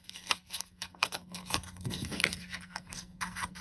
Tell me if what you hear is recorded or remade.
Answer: remade